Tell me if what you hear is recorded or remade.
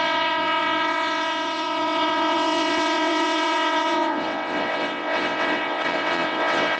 remade